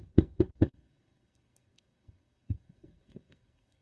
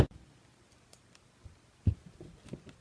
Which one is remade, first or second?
first